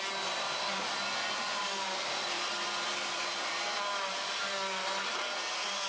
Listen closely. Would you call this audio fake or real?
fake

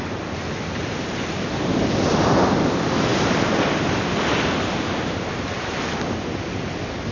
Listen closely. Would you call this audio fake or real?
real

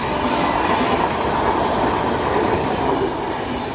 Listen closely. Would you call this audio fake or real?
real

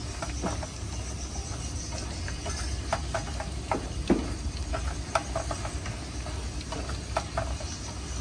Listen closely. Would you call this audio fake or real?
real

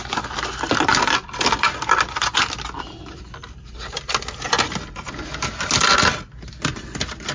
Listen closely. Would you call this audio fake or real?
real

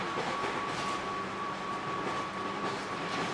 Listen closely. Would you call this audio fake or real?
fake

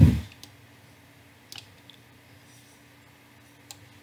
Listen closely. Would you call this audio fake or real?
real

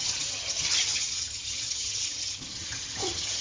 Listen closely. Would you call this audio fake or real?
fake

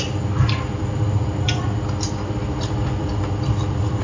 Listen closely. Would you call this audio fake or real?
fake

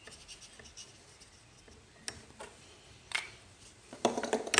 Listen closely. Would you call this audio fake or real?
real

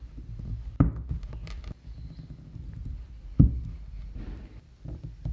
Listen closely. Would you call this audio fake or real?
real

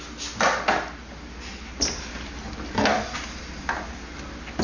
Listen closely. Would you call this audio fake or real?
real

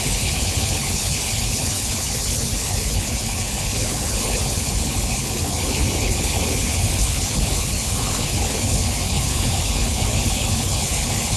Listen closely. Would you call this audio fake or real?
fake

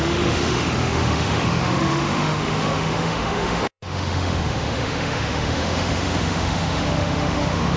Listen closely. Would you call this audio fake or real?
fake